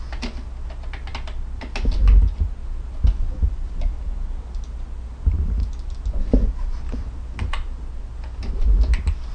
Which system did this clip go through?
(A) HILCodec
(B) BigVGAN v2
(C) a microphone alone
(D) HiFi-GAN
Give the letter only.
C